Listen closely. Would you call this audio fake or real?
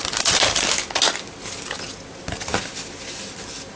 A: real